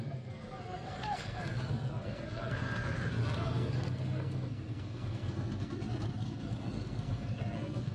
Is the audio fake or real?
fake